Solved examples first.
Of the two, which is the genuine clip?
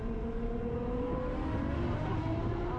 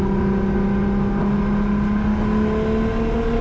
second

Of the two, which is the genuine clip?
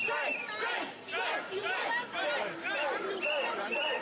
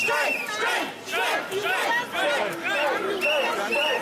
second